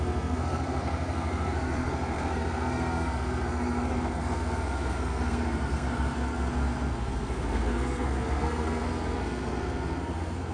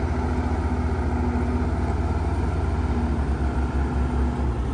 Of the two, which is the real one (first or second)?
second